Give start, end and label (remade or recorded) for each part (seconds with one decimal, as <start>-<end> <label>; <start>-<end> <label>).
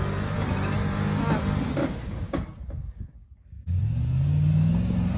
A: 0.0-1.8 recorded; 1.8-3.8 remade; 3.8-5.2 recorded